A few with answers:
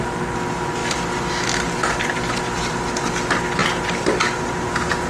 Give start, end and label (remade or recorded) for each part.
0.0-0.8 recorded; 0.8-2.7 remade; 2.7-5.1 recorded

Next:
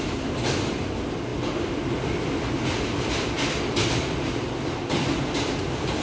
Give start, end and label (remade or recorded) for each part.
0.0-6.0 recorded

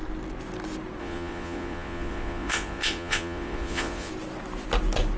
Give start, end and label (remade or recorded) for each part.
0.0-1.0 recorded; 1.0-4.1 remade; 4.1-5.2 recorded

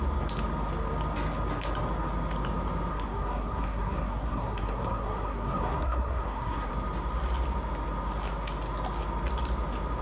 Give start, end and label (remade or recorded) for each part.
0.0-2.9 recorded; 2.9-6.7 remade; 6.7-10.0 recorded

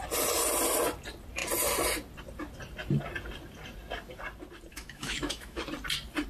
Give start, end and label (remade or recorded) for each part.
0.0-4.7 recorded; 4.7-5.6 remade; 5.6-6.3 recorded

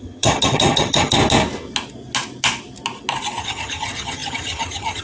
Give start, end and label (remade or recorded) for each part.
0.0-1.2 remade; 1.2-3.4 recorded; 3.4-5.0 remade